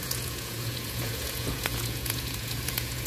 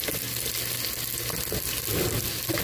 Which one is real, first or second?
second